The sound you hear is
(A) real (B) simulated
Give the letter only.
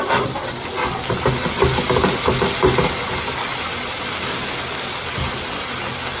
A